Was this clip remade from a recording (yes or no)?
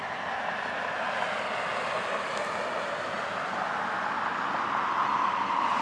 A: no